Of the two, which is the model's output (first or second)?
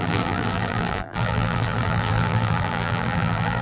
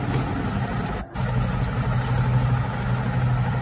first